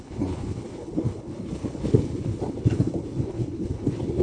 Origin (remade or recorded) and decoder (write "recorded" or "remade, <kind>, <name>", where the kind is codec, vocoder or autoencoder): remade, codec, HILCodec